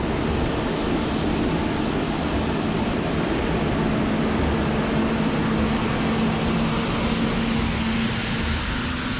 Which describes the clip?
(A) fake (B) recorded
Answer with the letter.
B